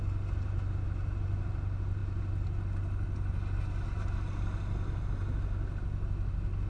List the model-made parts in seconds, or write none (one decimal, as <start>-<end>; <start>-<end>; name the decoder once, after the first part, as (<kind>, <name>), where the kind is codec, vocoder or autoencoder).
none